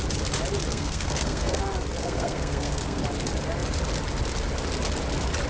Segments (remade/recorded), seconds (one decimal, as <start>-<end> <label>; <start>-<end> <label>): 0.0-0.7 recorded; 0.7-1.6 remade; 1.6-2.0 recorded; 2.0-3.0 remade; 3.0-5.5 recorded